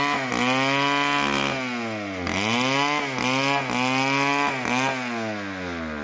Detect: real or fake real